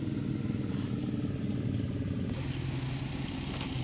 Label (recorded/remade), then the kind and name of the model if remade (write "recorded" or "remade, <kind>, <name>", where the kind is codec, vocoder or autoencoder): recorded